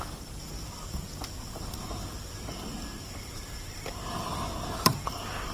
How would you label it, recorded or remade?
remade